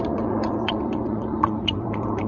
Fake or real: fake